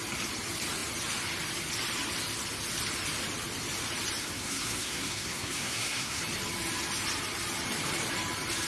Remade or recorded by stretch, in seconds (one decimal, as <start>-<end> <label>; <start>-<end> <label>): 0.0-4.2 recorded; 4.2-6.2 remade; 6.2-8.7 recorded

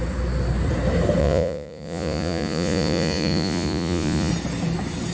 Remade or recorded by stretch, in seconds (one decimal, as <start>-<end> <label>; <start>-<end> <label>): 0.0-1.2 recorded; 1.2-4.3 remade; 4.3-5.1 recorded

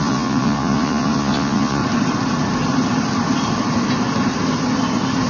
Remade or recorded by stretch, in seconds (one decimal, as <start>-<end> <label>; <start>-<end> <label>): 0.0-1.8 remade; 1.8-5.3 recorded

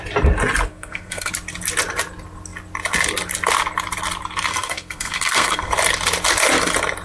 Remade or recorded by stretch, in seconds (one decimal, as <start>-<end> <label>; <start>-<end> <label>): 0.0-0.7 recorded; 0.7-1.3 remade; 1.3-4.5 recorded; 4.5-5.7 remade; 5.7-7.0 recorded

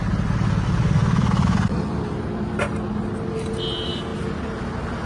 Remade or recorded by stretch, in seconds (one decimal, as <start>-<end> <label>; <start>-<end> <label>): 0.0-5.1 recorded